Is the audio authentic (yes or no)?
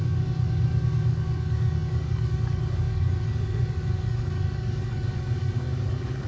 no